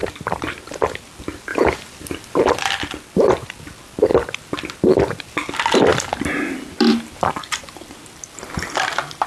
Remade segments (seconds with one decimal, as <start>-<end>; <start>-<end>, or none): 0.0-0.6; 4.1-5.5; 5.9-8.5